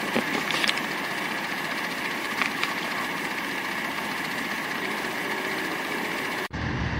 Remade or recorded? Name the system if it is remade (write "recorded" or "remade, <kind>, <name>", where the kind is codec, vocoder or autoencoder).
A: remade, vocoder, BigVGAN v2